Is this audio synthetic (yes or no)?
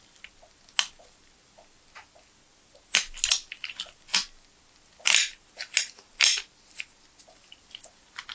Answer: no